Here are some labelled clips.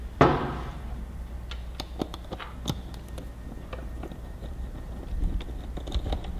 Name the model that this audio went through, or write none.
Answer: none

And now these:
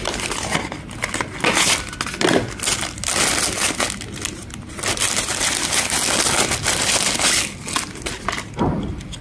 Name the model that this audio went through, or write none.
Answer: none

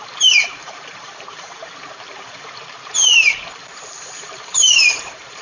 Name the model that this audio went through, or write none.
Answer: vocoder, BigVGAN v2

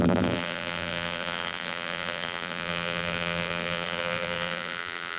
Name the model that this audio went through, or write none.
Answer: vocoder, BigVGAN v2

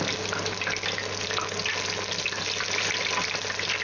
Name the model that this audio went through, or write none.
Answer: none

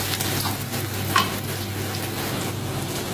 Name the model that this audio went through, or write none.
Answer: none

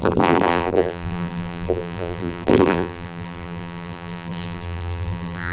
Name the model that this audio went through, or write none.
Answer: vocoder, BigVGAN v2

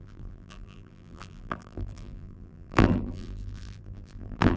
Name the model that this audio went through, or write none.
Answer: vocoder, BigVGAN v2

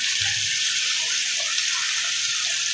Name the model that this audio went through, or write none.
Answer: none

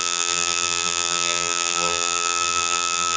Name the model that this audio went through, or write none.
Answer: vocoder, BigVGAN v2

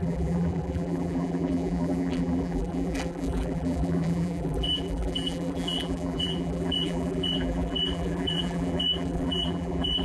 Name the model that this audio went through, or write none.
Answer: vocoder, BigVGAN v2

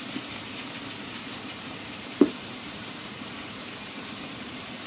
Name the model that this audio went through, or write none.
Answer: vocoder, BigVGAN v2